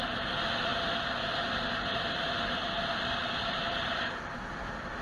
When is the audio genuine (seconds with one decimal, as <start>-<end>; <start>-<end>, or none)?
0.0-5.0